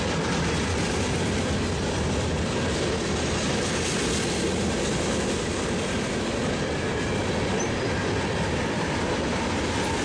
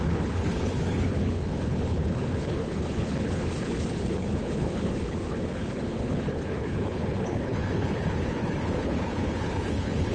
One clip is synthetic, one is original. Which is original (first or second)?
first